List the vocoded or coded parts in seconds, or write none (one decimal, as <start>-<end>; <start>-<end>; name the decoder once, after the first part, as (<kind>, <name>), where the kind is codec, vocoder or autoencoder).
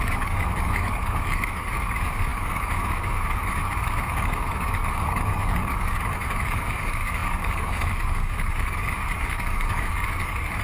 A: 0.0-10.6 (codec, DAC)